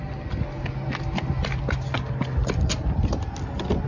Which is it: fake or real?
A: real